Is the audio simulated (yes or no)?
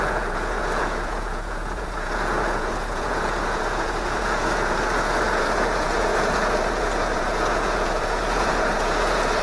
yes